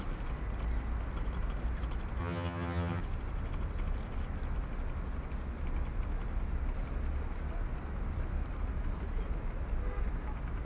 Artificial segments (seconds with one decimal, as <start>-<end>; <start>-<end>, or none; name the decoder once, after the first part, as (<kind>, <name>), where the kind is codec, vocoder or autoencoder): 2.2-3.0 (vocoder, HiFi-GAN)